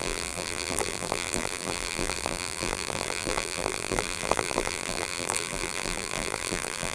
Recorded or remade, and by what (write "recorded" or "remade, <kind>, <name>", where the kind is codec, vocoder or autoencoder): remade, vocoder, BigVGAN v2